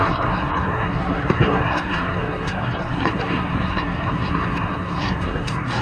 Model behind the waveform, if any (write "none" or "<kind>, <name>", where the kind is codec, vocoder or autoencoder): codec, SNAC